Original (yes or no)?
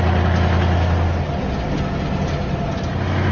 yes